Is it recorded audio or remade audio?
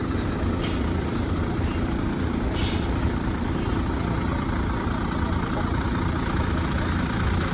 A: recorded